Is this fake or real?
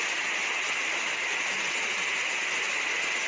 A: real